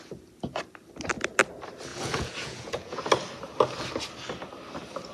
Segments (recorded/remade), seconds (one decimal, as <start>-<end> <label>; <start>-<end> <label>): 0.0-1.9 recorded; 1.9-3.1 remade; 3.1-5.1 recorded

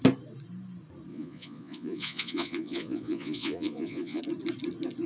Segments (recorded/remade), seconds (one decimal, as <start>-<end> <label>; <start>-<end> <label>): 0.0-1.1 recorded; 1.1-4.2 remade; 4.2-5.1 recorded

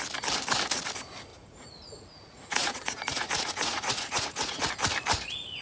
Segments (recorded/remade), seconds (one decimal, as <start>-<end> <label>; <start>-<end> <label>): 0.0-1.3 recorded; 1.3-4.7 remade; 4.7-5.6 recorded

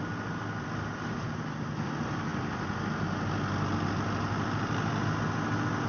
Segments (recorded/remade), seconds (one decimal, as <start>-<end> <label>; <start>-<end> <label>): 0.0-5.9 recorded

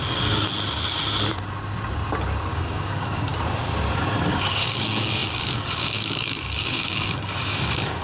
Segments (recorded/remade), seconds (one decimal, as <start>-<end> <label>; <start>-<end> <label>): 0.0-0.5 remade; 0.5-2.5 recorded; 2.5-3.3 remade; 3.3-4.3 recorded; 4.3-8.0 remade